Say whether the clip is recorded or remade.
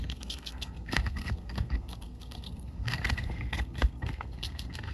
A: remade